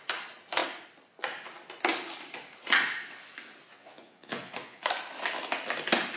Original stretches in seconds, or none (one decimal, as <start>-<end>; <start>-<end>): 0.0-3.7; 4.8-6.2